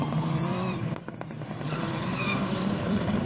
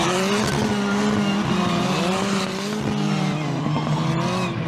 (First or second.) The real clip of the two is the second